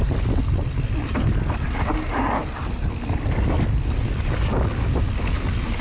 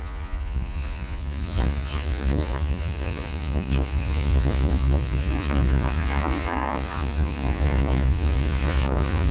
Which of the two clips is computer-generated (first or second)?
second